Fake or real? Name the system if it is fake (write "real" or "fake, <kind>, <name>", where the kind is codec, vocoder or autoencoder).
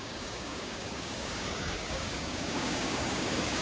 fake, codec, DAC